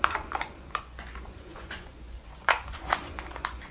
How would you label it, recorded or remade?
remade